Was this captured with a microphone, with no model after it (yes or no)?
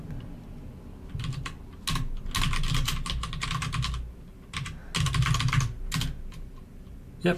yes